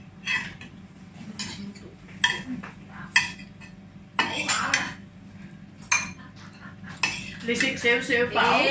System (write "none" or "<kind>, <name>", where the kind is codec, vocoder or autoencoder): none